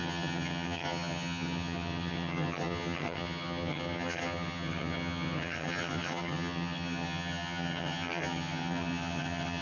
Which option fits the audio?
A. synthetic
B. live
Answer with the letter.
A